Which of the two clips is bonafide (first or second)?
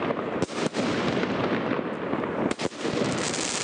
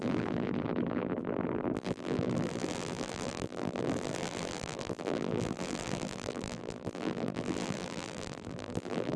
first